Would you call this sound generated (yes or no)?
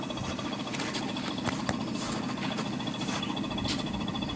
no